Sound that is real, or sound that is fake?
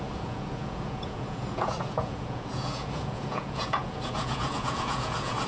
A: fake